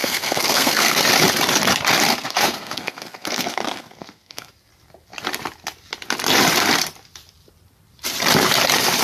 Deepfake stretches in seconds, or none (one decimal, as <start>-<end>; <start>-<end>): 0.0-1.0; 2.1-4.5